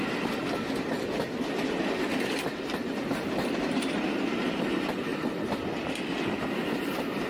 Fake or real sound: real